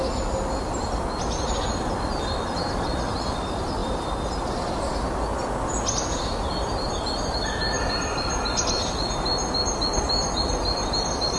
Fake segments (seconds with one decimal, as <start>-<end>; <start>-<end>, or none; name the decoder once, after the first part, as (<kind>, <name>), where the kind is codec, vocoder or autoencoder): none